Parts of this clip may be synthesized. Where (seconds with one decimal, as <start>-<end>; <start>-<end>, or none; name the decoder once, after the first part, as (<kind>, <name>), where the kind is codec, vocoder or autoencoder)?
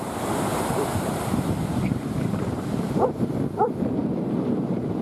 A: 0.5-3.5 (vocoder, BigVGAN v2); 4.0-5.0